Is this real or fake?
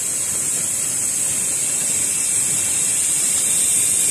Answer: real